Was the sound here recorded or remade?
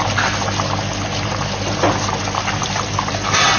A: recorded